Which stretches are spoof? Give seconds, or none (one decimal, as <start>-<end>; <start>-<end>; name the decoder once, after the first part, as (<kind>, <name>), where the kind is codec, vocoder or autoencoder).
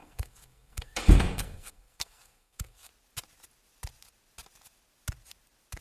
0.0-2.9 (codec, SNAC)